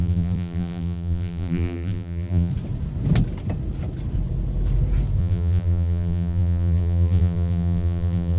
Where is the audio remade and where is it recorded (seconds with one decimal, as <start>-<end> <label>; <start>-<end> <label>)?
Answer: 0.0-2.5 remade; 2.5-5.2 recorded; 5.2-8.4 remade